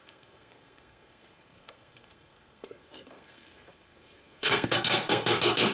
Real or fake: fake